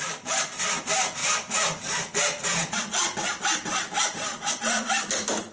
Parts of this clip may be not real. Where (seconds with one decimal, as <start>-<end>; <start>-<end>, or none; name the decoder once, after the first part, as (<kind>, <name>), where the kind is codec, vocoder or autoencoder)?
none